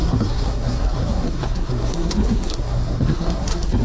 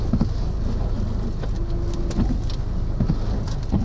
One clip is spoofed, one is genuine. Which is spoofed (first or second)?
first